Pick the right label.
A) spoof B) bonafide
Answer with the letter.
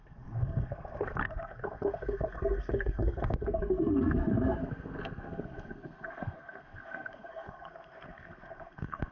A